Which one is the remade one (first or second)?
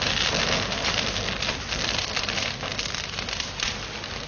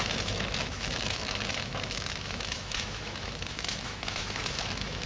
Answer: second